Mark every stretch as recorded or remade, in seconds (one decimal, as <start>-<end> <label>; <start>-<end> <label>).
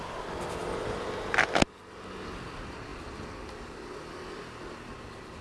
0.0-5.4 recorded